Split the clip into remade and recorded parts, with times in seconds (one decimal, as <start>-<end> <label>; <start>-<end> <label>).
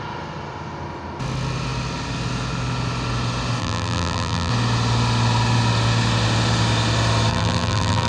0.0-3.6 recorded; 3.6-4.5 remade; 4.5-7.3 recorded; 7.3-8.1 remade